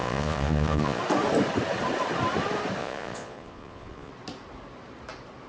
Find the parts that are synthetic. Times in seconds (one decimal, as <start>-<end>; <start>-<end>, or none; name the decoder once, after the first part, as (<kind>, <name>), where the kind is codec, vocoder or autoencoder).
0.0-1.0 (vocoder, Vocos); 2.8-4.1